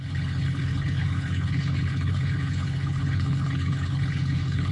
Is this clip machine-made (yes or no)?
yes